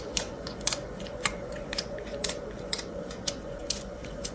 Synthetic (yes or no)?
yes